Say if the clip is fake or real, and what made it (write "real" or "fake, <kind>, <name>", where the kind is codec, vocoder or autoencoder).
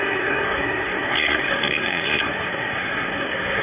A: fake, codec, SNAC